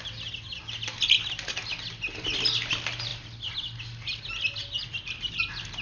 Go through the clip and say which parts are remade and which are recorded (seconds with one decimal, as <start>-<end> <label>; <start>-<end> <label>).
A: 0.0-5.8 recorded